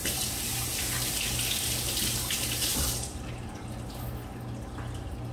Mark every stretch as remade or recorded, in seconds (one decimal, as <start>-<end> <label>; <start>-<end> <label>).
0.0-1.1 remade; 1.1-2.7 recorded; 2.7-3.3 remade; 3.3-5.3 recorded